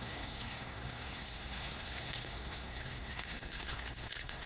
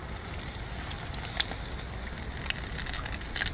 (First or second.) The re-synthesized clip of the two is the first